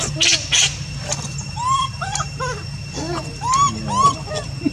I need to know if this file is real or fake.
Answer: real